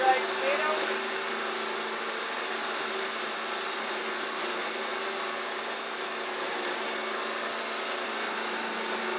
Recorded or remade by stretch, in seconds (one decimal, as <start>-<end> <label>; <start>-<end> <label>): 0.0-9.2 recorded